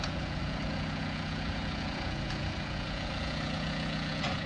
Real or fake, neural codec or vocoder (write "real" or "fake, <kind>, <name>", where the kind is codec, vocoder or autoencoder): fake, vocoder, Vocos